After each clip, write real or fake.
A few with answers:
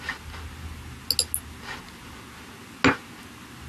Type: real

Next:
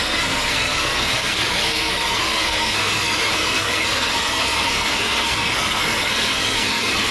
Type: fake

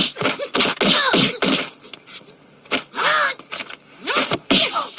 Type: real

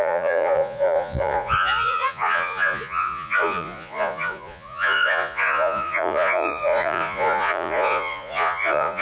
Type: fake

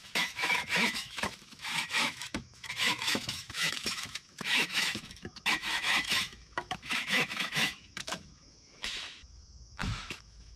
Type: fake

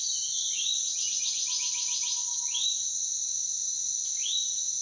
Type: real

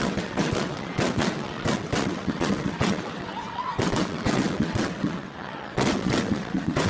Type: fake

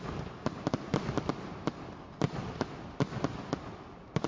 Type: real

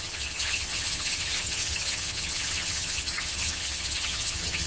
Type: fake